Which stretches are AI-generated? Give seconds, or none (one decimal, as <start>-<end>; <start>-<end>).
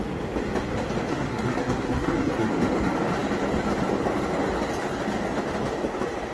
1.1-2.5